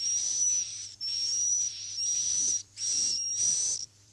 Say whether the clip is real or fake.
fake